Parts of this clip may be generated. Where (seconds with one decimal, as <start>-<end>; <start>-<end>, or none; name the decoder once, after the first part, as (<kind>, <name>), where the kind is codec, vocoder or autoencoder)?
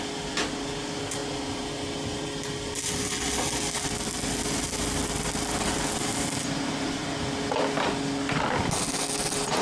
none